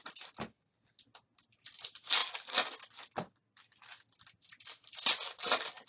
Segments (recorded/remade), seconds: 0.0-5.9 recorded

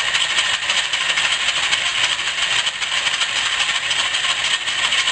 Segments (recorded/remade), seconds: 0.0-5.1 recorded

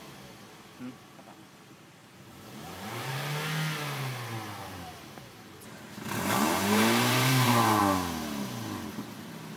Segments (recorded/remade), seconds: 0.0-2.0 recorded; 2.0-3.1 remade; 3.1-4.6 recorded; 4.6-7.8 remade; 7.8-9.6 recorded